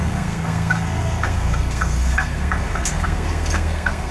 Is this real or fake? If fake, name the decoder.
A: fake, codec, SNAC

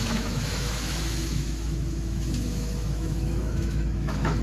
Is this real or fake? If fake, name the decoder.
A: fake, autoencoder, DAC-VAE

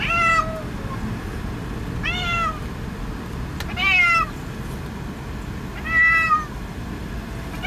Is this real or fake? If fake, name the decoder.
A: real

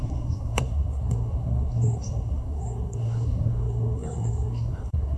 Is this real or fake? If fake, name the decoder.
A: fake, codec, SNAC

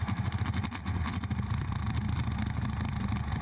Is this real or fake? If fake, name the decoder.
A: fake, vocoder, BigVGAN v2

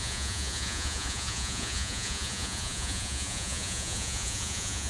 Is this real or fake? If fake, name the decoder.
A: fake, vocoder, Vocos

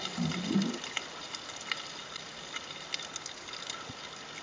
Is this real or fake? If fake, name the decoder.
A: real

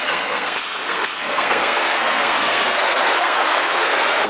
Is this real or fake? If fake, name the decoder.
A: fake, codec, SNAC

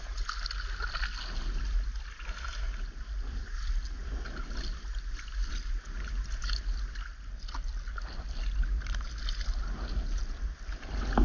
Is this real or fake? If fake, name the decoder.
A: real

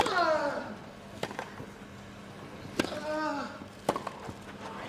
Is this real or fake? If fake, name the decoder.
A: real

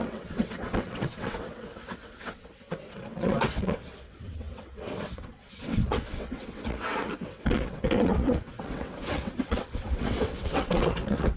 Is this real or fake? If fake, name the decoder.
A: fake, vocoder, WaveNeXt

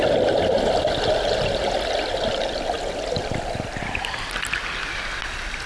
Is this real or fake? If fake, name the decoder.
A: real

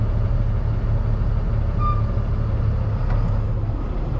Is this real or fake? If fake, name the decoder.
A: real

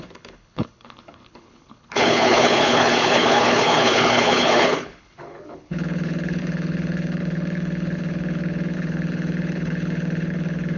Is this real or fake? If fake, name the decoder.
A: fake, codec, HILCodec